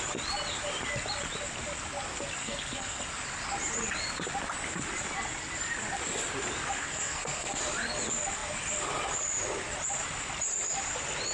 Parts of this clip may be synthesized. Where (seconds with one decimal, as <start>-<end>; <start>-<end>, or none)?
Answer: 2.4-3.0; 6.8-7.6